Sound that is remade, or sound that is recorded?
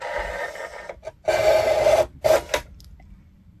recorded